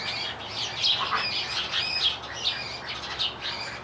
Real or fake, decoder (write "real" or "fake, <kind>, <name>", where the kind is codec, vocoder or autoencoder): real